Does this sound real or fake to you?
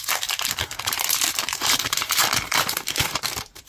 fake